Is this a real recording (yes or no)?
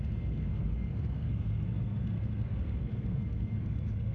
no